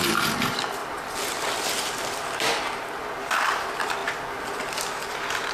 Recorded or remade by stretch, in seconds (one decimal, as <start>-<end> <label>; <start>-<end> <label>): 0.0-0.8 recorded; 0.8-2.8 remade; 2.8-4.0 recorded; 4.0-4.6 remade; 4.6-5.5 recorded